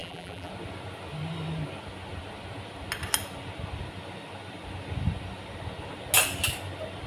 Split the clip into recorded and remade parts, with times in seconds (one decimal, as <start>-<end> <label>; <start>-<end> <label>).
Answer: 0.0-0.5 remade; 0.5-7.1 recorded